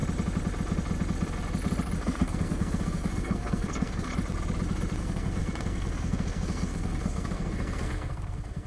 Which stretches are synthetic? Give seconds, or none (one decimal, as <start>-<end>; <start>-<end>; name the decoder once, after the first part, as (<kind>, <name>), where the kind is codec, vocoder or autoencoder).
2.0-4.1 (codec, SNAC); 5.0-8.7

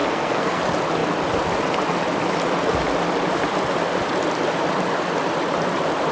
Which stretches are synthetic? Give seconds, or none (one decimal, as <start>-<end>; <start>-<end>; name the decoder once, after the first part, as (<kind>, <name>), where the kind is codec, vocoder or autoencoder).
0.0-0.6 (codec, SNAC)